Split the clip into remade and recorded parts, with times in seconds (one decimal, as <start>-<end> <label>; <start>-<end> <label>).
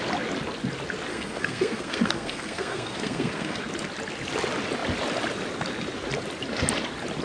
0.0-1.1 recorded; 1.1-3.6 remade; 3.6-7.2 recorded